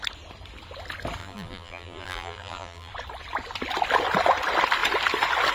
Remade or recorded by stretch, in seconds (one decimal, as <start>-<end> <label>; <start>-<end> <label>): 0.0-1.2 recorded; 1.2-2.9 remade; 2.9-5.5 recorded